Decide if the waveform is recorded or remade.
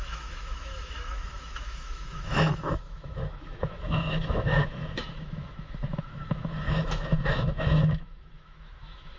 remade